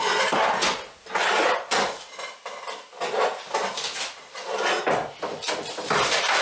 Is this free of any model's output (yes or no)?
yes